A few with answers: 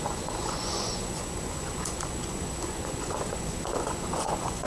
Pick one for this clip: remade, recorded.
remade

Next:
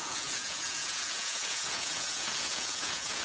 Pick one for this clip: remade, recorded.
remade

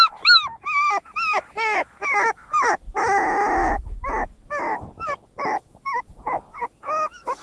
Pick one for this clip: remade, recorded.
remade